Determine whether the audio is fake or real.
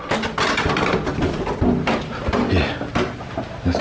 real